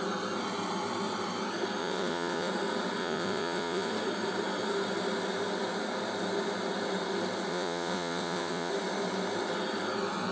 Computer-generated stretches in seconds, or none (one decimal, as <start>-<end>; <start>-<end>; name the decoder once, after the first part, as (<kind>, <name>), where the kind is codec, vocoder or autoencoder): 1.8-2.5 (vocoder, Vocos); 3.0-3.9; 7.5-8.7